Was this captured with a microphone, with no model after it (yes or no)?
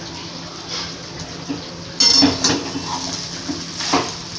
yes